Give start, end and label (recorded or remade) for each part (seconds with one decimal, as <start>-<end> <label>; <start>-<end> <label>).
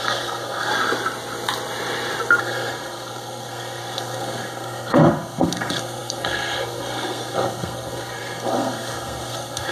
0.0-0.7 remade; 0.7-2.4 recorded; 2.4-9.7 remade